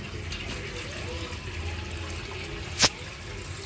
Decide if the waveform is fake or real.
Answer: real